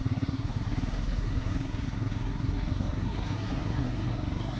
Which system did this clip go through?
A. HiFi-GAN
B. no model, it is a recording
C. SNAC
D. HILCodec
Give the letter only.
C